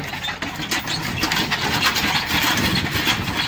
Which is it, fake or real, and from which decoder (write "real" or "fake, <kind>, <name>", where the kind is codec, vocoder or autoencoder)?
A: fake, vocoder, BigVGAN v2